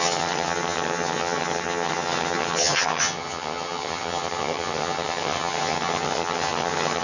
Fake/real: fake